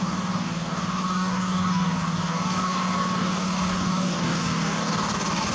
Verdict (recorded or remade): remade